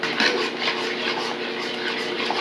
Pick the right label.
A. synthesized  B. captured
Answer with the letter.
B